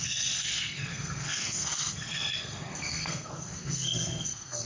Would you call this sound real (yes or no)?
no